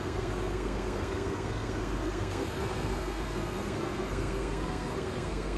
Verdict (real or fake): fake